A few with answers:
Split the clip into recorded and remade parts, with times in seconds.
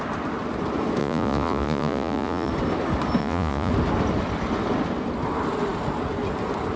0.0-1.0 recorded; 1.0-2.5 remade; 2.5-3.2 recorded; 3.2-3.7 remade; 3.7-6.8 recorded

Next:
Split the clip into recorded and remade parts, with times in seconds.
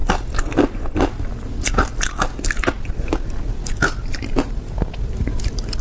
0.0-5.8 recorded